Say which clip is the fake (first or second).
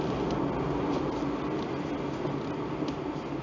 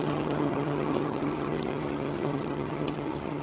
second